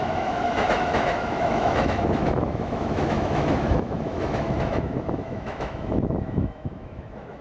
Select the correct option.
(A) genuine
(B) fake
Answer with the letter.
B